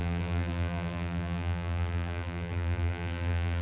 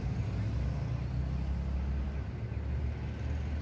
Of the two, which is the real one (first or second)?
second